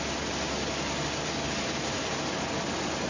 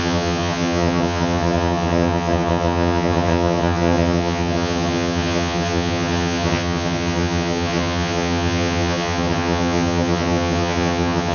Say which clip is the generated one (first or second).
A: second